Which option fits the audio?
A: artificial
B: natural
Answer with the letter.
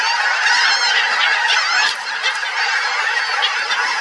B